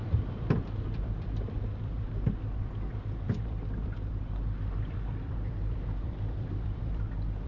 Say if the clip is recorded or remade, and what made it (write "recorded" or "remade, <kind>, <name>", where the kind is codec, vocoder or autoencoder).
remade, vocoder, BigVGAN v2